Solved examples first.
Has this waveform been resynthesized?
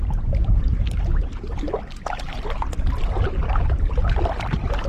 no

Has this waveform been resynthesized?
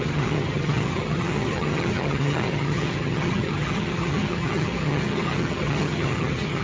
yes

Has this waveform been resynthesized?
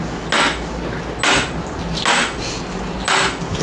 no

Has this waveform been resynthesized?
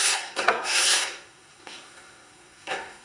yes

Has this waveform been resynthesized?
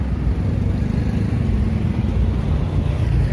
no